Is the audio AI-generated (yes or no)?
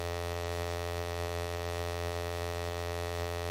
yes